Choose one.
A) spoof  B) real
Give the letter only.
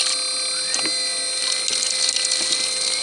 B